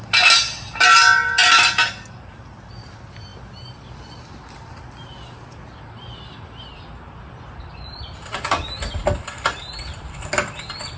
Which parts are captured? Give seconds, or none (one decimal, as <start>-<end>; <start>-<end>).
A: 0.0-11.0